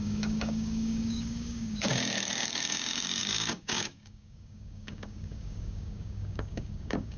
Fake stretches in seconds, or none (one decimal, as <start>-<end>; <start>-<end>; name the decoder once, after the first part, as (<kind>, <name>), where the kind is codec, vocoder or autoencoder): 0.0-7.2 (codec, DAC)